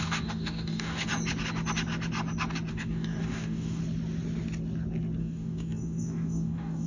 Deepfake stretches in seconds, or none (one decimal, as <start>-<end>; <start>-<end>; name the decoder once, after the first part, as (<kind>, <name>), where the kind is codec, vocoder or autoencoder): 0.0-1.1 (codec, DAC); 2.7-3.8; 5.2-6.9